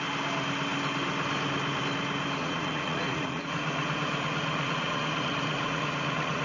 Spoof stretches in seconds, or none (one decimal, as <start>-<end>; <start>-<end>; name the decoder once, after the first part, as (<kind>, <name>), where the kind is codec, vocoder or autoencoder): 2.4-6.4 (vocoder, Vocos)